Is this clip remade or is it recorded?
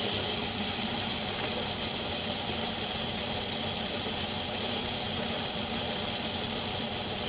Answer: remade